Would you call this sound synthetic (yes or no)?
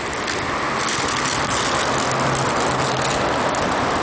no